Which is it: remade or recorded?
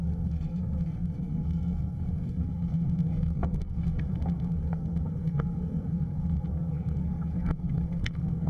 remade